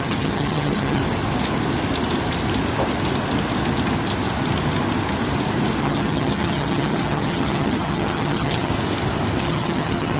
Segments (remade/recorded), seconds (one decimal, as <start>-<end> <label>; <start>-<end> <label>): 0.0-1.0 remade; 1.0-5.8 recorded; 5.8-8.7 remade; 8.7-9.4 recorded; 9.4-10.2 remade